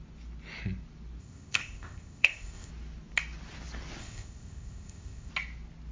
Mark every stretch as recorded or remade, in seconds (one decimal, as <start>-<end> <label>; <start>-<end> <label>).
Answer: 0.0-1.2 recorded; 1.2-2.7 remade; 2.7-4.0 recorded; 4.0-5.3 remade; 5.3-5.9 recorded